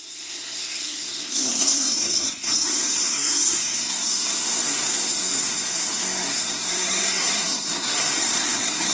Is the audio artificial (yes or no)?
yes